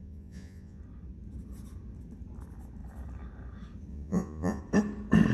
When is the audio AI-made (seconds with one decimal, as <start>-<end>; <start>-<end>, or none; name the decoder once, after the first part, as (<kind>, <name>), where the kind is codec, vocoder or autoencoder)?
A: 0.0-0.8 (vocoder, Vocos); 3.9-4.6